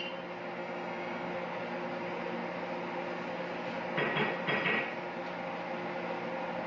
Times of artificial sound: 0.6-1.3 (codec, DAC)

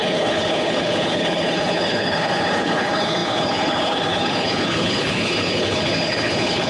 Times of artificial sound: 0.0-6.7 (codec, HILCodec)

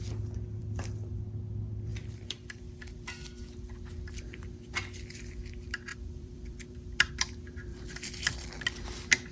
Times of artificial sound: 0.6-1.2 (vocoder, BigVGAN v2); 1.9-3.4; 5.9-7.1; 7.7-8.5

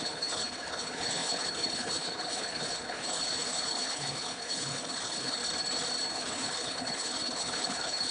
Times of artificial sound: 0.0-5.4 (codec, HILCodec); 6.1-8.1

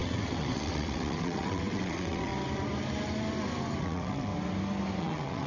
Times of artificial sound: 0.0-2.3 (vocoder, WaveNeXt); 3.8-4.3; 5.0-5.5

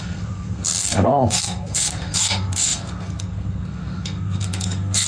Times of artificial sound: 0.0-5.1 (codec, SNAC)

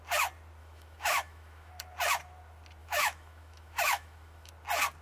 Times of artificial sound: 0.6-1.7 (autoencoder, DAC-VAE); 2.8-4.5

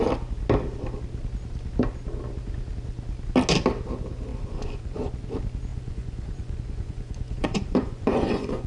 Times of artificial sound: 4.3-5.1 (vocoder, Vocos); 5.7-8.7